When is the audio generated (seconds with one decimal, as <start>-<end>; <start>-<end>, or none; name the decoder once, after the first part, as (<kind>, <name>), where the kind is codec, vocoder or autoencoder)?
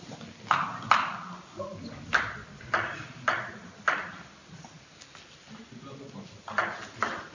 none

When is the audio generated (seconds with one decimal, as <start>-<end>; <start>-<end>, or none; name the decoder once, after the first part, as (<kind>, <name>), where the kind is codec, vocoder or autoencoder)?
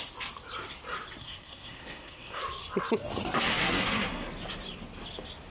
1.2-2.4 (codec, SNAC); 3.5-4.3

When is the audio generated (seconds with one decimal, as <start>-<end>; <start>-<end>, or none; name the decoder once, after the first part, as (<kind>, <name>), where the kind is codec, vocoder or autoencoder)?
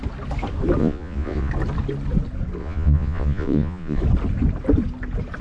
0.8-1.5 (vocoder, Vocos); 2.6-4.0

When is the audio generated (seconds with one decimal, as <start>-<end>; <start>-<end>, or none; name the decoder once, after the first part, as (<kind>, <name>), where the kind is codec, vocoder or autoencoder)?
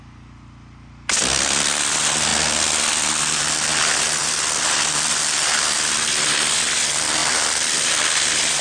7.2-7.8 (vocoder, BigVGAN v2)